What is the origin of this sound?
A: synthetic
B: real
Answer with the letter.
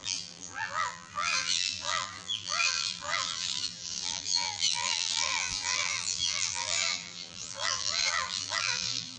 A